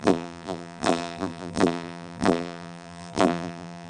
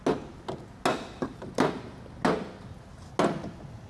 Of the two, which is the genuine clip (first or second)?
second